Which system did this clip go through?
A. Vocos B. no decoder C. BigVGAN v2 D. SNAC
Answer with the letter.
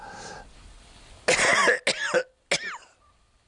B